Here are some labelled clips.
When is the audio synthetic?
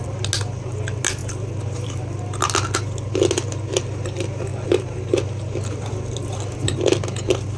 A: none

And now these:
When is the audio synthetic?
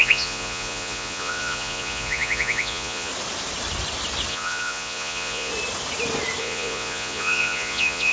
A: 0.0-3.1 (vocoder, Vocos); 4.3-5.5; 6.4-8.1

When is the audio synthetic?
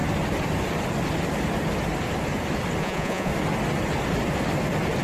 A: 2.8-3.3 (vocoder, Vocos)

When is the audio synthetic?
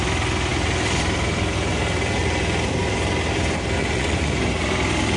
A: 3.8-4.3 (vocoder, Vocos)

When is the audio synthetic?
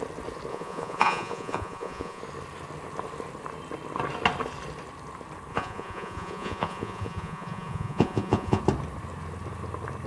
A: 0.5-2.2 (vocoder, Vocos); 5.5-8.6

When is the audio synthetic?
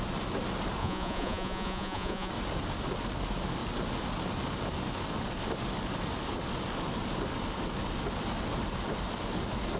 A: 0.8-2.3 (vocoder, Vocos)